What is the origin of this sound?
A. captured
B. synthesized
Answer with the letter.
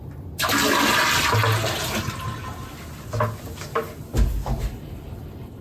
A